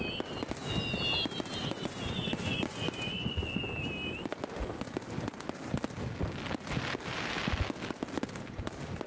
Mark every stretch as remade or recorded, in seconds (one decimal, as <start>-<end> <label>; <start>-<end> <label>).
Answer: 0.0-1.6 recorded; 1.6-3.6 remade; 3.6-9.1 recorded